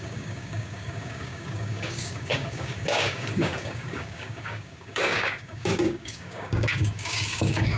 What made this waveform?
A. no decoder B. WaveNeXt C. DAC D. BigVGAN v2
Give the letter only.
C